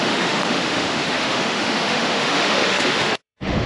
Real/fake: fake